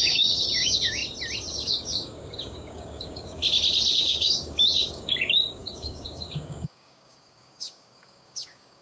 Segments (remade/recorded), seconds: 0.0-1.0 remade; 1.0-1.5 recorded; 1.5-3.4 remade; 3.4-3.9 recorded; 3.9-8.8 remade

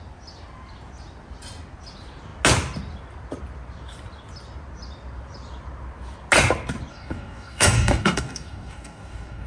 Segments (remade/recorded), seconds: 0.0-6.9 recorded; 6.9-9.5 remade

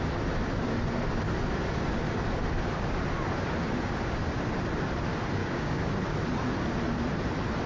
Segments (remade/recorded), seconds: 0.0-5.4 recorded; 5.4-5.9 remade; 5.9-7.7 recorded

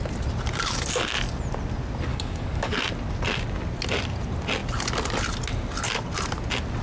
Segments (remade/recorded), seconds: 0.0-2.1 recorded; 2.1-2.8 remade; 2.8-6.8 recorded

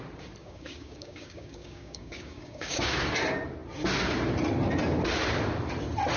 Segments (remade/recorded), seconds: 0.0-0.4 recorded; 0.4-2.9 remade; 2.9-6.2 recorded

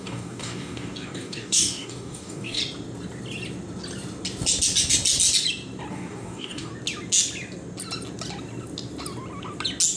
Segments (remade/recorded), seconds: 0.0-2.6 remade; 2.6-5.9 recorded; 5.9-6.7 remade; 6.7-10.0 recorded

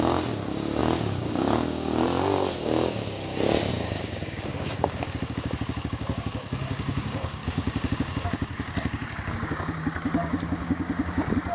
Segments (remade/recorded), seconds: 0.0-11.5 remade